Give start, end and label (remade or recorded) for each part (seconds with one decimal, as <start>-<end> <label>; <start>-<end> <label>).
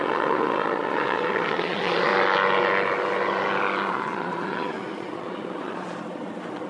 0.0-2.1 remade; 2.1-3.9 recorded; 3.9-6.7 remade